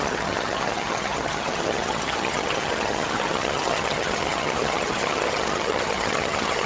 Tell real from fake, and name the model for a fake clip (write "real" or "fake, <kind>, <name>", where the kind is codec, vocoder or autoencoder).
fake, vocoder, HiFi-GAN